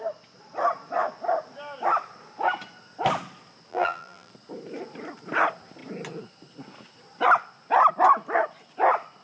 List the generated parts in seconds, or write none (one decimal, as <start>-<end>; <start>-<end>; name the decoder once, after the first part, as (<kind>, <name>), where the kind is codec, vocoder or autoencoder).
3.7-4.3 (vocoder, BigVGAN v2)

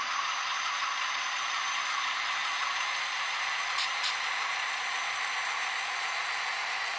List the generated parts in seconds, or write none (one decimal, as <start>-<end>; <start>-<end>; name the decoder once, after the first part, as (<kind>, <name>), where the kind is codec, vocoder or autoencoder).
0.0-0.5 (vocoder, BigVGAN v2); 1.1-2.4; 6.6-7.0